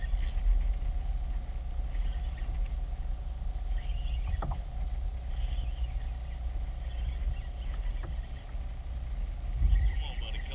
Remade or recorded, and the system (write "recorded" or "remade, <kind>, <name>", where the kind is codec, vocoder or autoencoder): recorded